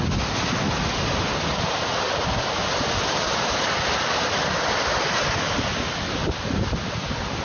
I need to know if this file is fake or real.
real